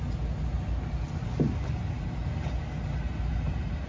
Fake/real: real